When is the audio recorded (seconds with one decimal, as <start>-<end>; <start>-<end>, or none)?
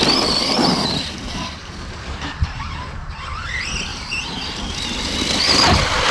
0.0-0.4; 3.0-3.9; 4.7-6.1